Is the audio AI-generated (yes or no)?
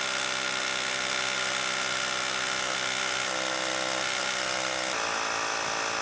no